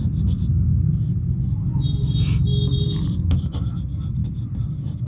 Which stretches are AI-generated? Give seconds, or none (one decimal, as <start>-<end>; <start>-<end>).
none